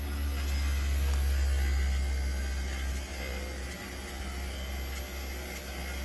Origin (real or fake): real